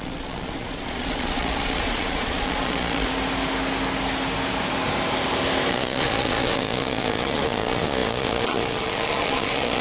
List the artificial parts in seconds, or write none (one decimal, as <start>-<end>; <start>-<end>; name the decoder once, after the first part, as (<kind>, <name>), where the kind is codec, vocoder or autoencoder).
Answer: 0.0-3.1 (vocoder, Vocos); 5.7-9.8